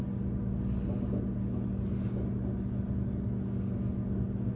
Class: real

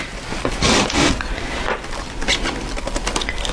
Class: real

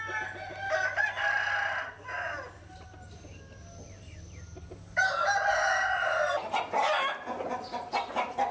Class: real